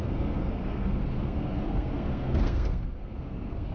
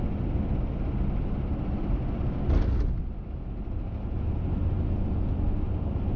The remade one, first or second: first